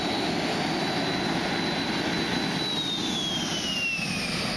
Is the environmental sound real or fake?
real